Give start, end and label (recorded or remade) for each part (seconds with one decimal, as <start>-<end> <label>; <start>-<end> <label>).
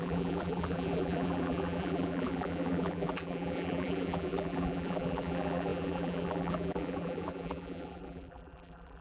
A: 0.0-9.0 remade